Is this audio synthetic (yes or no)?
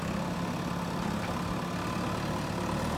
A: no